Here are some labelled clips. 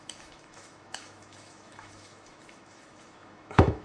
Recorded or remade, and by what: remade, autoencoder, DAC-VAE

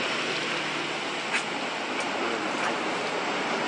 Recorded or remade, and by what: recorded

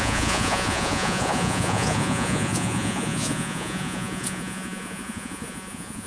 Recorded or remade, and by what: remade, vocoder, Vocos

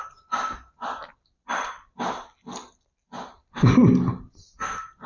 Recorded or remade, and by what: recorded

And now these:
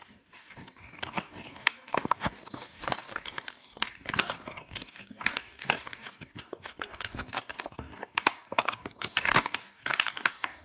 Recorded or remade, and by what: remade, codec, DAC